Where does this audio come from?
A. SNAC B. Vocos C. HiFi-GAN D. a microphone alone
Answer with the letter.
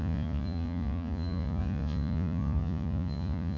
B